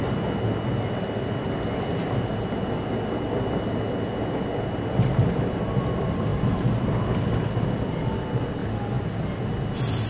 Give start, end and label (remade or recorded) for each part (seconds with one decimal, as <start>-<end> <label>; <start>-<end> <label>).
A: 0.0-6.3 recorded; 6.3-6.9 remade; 6.9-10.1 recorded